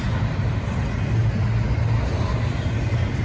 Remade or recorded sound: recorded